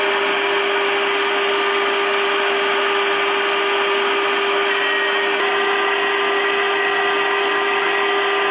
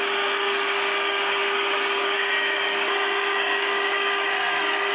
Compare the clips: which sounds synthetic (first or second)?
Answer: second